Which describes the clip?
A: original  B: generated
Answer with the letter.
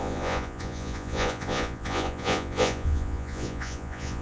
B